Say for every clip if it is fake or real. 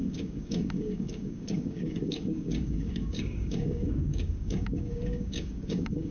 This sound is fake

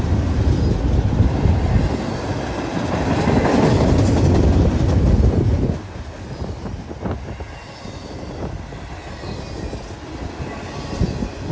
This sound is real